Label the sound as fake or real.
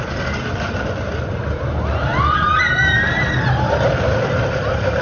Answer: real